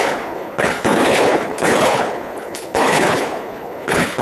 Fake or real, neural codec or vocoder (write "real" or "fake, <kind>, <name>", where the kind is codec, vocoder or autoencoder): fake, codec, HILCodec